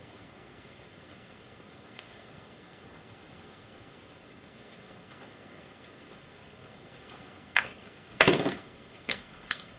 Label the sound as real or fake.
fake